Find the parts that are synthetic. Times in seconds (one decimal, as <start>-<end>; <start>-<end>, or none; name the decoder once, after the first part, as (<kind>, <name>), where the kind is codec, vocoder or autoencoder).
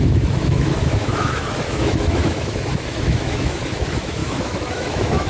0.0-5.3 (autoencoder, DAC-VAE)